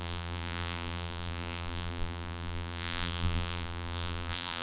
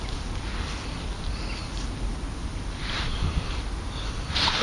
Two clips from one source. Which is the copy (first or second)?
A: first